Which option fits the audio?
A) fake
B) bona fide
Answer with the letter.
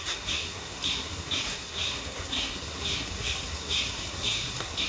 A